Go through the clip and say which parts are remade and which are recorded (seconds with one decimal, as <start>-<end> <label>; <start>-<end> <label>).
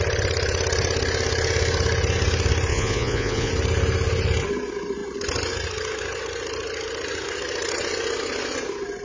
0.0-2.7 recorded; 2.7-3.5 remade; 3.5-9.0 recorded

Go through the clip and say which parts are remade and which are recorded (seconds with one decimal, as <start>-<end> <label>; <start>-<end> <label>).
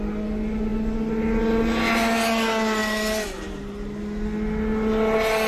0.0-5.5 recorded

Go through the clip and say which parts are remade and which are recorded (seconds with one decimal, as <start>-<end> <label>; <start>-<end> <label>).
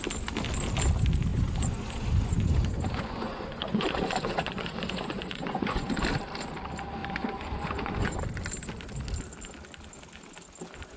0.0-1.3 recorded; 1.3-5.9 remade; 5.9-7.0 recorded; 7.0-8.2 remade; 8.2-11.0 recorded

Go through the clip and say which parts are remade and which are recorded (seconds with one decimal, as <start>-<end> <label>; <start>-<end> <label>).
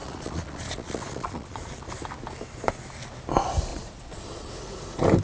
0.0-1.9 remade; 1.9-3.7 recorded; 3.7-4.5 remade; 4.5-5.2 recorded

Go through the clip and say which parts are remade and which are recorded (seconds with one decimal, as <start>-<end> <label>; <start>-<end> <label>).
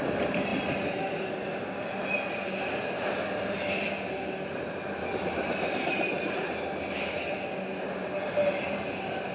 0.0-9.3 recorded